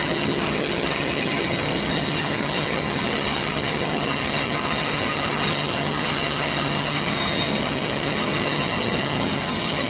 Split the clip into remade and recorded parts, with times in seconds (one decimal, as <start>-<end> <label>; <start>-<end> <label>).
0.0-9.9 remade